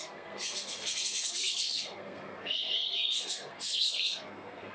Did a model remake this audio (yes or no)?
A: yes